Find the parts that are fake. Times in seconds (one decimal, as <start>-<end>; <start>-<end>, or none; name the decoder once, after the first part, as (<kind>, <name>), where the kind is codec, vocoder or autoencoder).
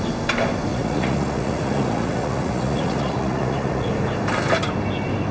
0.7-3.9 (vocoder, Vocos)